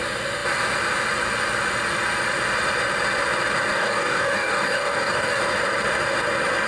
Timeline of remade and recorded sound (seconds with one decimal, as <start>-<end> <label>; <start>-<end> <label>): 0.0-3.7 recorded; 3.7-5.4 remade; 5.4-6.7 recorded